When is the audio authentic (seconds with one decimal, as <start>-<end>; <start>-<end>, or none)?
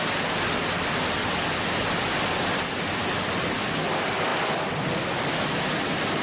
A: 0.0-6.2